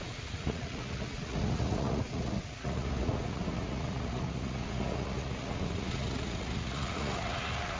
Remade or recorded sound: remade